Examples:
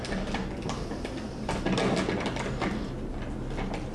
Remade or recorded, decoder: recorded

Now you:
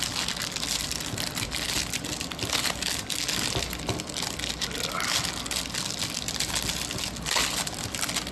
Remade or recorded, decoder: recorded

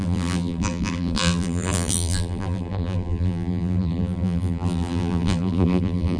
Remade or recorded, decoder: remade, vocoder, BigVGAN v2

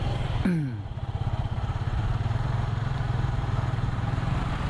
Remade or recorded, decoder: remade, vocoder, BigVGAN v2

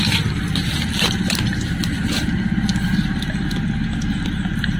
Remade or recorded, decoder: recorded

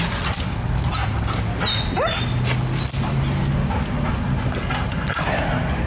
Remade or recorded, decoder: recorded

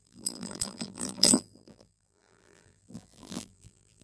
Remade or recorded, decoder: remade, vocoder, BigVGAN v2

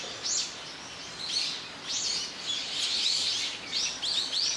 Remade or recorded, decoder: recorded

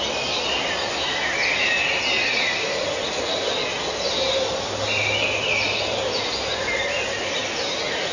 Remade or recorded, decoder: recorded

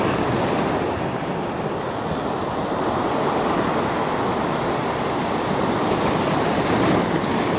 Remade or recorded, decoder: recorded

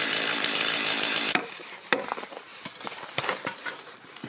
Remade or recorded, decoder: remade, vocoder, BigVGAN v2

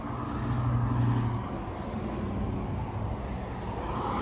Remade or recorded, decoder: recorded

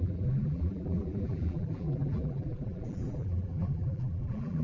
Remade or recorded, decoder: remade, vocoder, BigVGAN v2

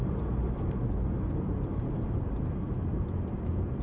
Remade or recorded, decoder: remade, vocoder, BigVGAN v2